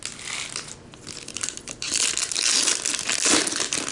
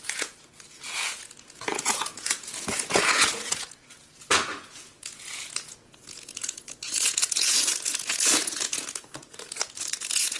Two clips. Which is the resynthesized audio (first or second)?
second